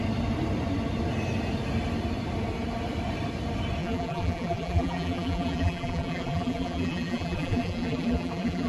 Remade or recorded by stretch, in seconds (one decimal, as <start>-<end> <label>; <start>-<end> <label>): 0.0-3.8 recorded; 3.8-8.7 remade